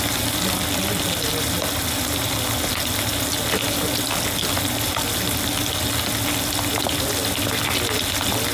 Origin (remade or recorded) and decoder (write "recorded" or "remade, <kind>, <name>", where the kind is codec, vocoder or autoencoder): recorded